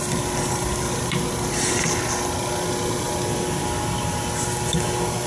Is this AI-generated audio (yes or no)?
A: no